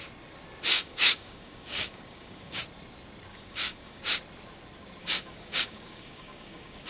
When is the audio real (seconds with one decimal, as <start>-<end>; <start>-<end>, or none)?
0.0-0.7; 2.6-3.3; 4.0-5.0